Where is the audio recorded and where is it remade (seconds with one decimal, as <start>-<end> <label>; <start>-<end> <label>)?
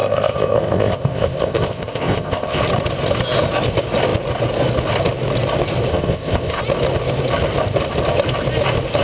0.0-2.6 remade; 2.6-5.9 recorded; 5.9-6.6 remade; 6.6-9.0 recorded